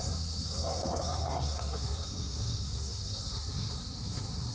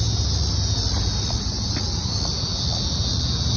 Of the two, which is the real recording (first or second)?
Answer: second